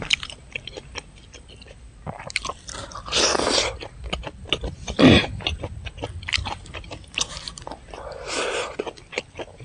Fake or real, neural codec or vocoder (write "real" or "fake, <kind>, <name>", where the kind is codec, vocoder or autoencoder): real